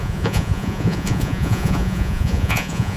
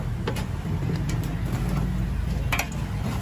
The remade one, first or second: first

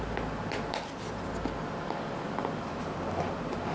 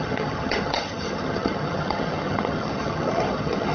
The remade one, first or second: second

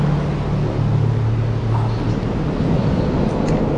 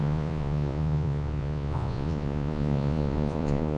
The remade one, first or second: second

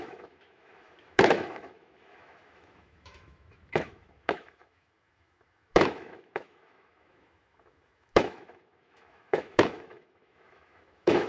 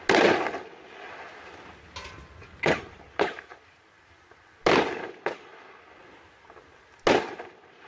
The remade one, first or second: first